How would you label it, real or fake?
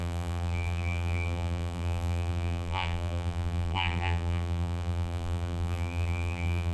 fake